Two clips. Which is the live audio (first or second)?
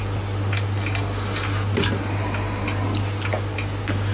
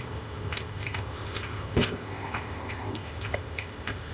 first